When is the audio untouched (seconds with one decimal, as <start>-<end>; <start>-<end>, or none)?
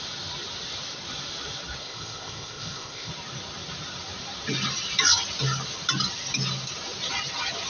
0.0-1.8; 3.1-7.7